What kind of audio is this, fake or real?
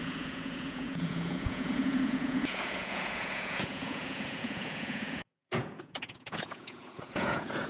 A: fake